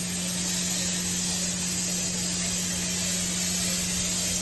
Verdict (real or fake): real